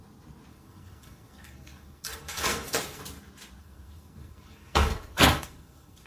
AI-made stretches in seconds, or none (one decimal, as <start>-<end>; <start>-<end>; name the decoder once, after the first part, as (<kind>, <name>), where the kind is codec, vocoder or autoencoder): 0.5-3.0 (codec, SNAC); 3.6-6.1

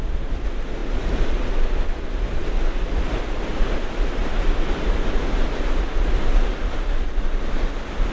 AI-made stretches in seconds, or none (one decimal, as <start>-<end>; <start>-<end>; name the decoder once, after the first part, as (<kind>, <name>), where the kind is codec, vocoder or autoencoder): 4.2-5.1 (vocoder, BigVGAN v2)

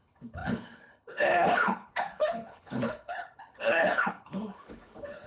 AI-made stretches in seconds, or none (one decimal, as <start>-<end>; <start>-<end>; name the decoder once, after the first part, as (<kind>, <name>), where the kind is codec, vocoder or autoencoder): 0.0-5.3 (codec, HILCodec)

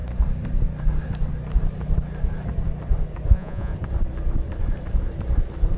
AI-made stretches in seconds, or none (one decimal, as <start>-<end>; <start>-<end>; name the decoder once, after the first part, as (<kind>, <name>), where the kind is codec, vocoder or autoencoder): 3.3-3.7 (vocoder, Vocos)

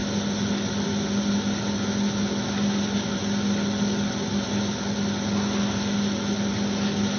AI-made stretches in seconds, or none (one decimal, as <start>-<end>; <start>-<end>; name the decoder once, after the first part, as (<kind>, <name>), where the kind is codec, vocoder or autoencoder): none

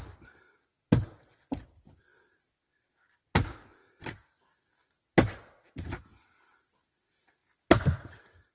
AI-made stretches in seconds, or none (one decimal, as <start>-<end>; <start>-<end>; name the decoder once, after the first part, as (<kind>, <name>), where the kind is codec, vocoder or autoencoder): none